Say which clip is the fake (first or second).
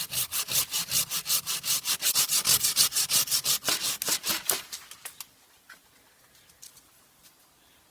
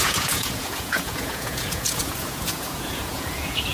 second